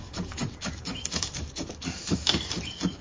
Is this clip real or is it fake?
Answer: fake